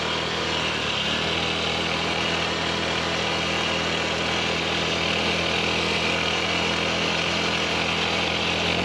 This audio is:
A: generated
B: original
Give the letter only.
B